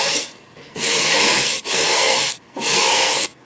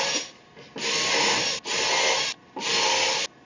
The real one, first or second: second